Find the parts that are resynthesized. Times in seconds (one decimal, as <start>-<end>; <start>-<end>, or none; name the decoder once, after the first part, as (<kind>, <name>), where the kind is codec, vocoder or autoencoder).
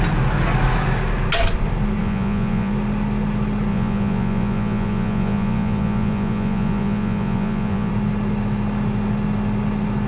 2.0-2.7 (vocoder, Vocos); 3.7-7.9